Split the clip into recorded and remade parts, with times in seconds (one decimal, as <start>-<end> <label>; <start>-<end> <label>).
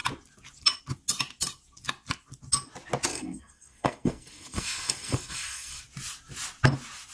0.0-3.1 recorded; 3.1-5.8 remade; 5.8-7.1 recorded